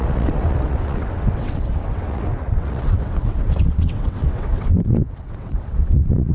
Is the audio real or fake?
fake